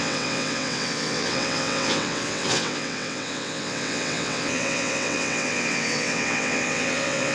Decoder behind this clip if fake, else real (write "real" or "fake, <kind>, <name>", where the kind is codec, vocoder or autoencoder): fake, vocoder, WaveNeXt